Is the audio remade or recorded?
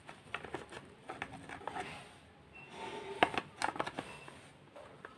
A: recorded